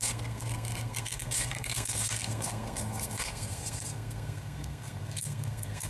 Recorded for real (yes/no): no